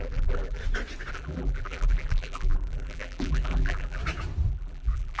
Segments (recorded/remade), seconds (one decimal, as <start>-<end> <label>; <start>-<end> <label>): 0.0-0.6 remade; 0.6-1.1 recorded; 1.1-4.0 remade; 4.0-4.5 recorded; 4.5-5.2 remade